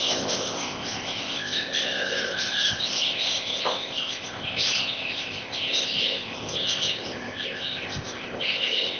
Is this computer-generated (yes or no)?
yes